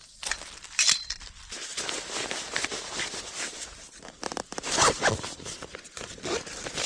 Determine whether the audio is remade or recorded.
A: recorded